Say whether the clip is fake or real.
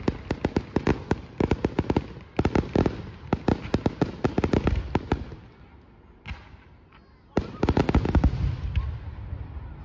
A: real